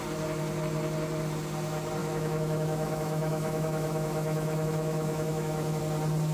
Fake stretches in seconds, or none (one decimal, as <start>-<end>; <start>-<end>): 2.0-5.8